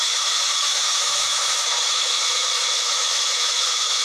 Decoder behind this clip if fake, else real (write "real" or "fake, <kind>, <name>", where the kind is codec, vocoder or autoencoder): fake, autoencoder, DAC-VAE